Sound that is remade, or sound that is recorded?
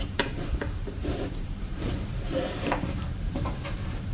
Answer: remade